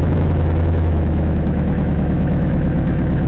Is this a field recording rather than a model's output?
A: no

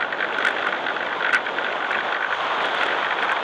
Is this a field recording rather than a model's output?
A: yes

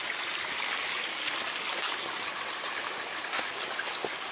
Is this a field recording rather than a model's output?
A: yes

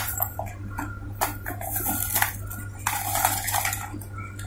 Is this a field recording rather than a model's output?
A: yes